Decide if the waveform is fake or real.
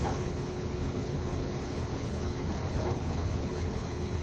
fake